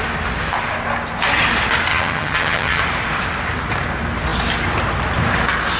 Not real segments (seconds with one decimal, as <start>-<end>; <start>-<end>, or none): 1.9-2.8